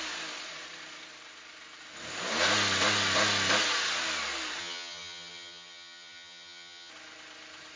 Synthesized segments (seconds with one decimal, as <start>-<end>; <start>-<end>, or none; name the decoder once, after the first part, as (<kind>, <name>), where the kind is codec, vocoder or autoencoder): 4.6-6.9 (vocoder, HiFi-GAN)